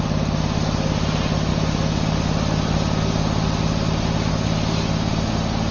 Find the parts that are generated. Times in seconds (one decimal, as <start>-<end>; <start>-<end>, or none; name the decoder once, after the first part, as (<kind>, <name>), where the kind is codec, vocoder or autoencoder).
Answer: none